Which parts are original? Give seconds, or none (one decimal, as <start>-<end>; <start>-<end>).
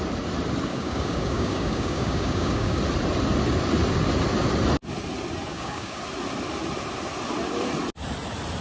0.0-0.7; 2.8-5.5; 6.0-8.6